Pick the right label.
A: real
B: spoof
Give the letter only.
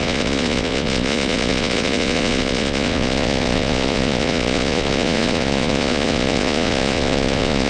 B